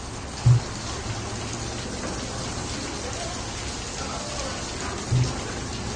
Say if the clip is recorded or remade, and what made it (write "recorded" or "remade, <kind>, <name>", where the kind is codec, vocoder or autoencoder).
recorded